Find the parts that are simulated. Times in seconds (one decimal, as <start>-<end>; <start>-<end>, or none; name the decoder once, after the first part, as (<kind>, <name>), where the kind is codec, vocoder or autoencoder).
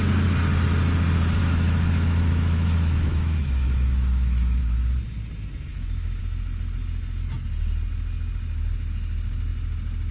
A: 1.4-4.6 (autoencoder, DAC-VAE); 5.7-6.2